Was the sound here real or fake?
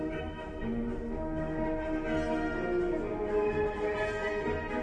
real